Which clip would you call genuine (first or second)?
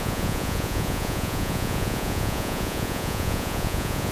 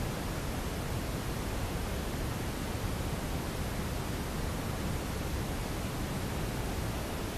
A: second